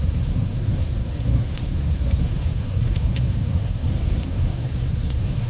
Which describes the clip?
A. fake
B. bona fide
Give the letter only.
A